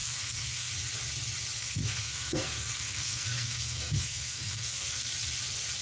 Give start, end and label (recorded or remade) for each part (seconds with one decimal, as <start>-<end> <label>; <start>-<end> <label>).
0.0-0.7 remade; 0.7-1.6 recorded; 1.6-5.1 remade; 5.1-5.8 recorded